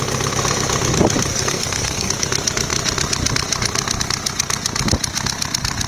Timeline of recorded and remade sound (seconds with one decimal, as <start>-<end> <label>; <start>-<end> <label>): 0.0-1.3 recorded; 1.3-2.1 remade; 2.1-5.9 recorded